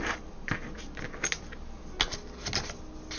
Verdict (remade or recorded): recorded